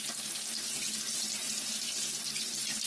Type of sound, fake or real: real